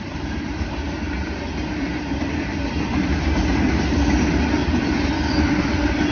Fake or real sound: fake